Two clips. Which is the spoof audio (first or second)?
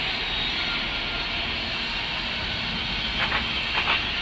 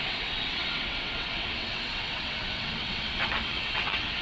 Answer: second